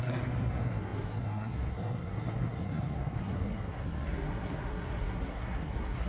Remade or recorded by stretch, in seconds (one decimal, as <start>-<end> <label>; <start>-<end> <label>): 0.0-6.1 remade